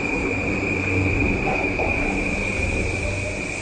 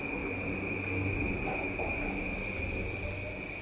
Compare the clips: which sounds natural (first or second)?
second